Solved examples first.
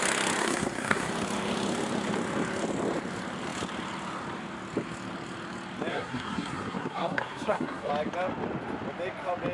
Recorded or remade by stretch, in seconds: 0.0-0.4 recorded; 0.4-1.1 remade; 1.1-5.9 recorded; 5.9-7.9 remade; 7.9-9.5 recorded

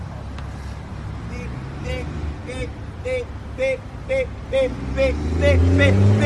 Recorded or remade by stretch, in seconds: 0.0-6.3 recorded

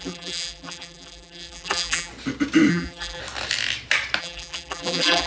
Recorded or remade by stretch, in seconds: 0.0-2.1 remade; 2.1-2.7 recorded; 2.7-3.2 remade; 3.2-4.2 recorded; 4.2-5.3 remade

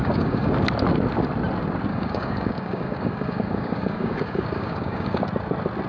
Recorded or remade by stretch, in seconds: 0.0-0.5 remade; 0.5-1.9 recorded; 1.9-5.2 remade; 5.2-5.9 recorded

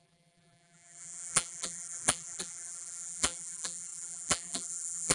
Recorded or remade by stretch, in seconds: 0.0-5.1 remade

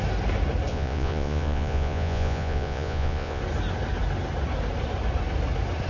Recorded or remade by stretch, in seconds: 0.0-0.7 recorded; 0.7-3.4 remade; 3.4-5.9 recorded